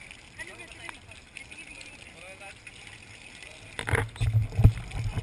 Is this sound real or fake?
real